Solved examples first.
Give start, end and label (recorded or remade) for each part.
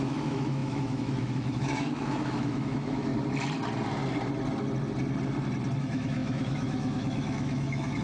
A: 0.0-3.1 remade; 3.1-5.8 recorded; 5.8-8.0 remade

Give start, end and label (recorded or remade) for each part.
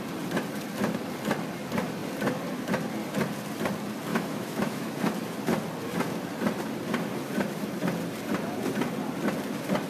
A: 0.0-4.1 recorded; 4.1-4.9 remade; 4.9-9.9 recorded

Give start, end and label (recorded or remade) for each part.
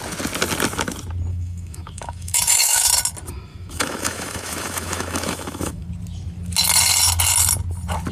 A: 0.0-1.3 recorded; 1.3-2.9 remade; 2.9-3.5 recorded; 3.5-5.9 remade; 5.9-8.1 recorded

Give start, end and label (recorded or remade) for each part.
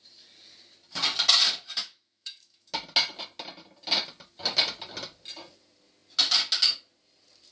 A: 0.0-1.8 recorded; 1.8-2.7 remade; 2.7-7.5 recorded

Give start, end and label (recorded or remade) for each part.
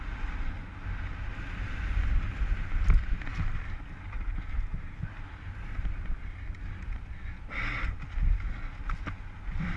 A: 0.0-9.8 recorded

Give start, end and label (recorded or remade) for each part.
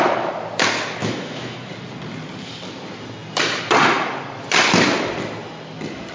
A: 0.0-1.0 recorded; 1.0-1.7 remade; 1.7-6.1 recorded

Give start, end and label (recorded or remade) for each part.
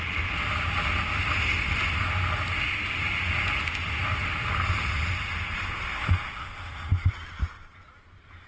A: 0.0-5.9 recorded; 5.9-7.1 remade; 7.1-8.5 recorded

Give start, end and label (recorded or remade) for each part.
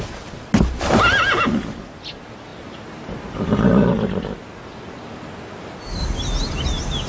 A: 0.0-7.1 recorded